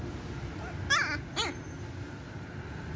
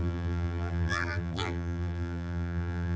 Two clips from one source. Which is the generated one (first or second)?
second